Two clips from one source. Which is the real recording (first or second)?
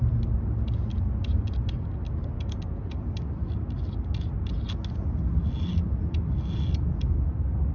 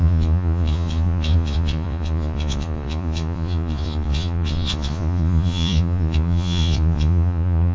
first